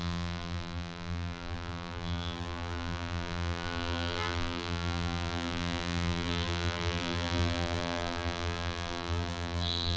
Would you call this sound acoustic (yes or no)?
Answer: no